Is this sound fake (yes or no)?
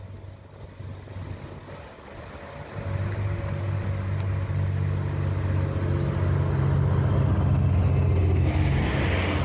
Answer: no